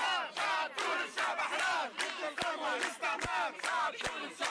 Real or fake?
real